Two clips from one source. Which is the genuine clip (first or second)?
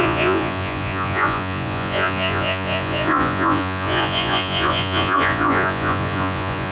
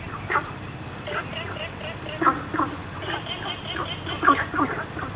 second